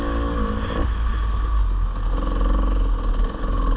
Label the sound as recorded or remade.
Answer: recorded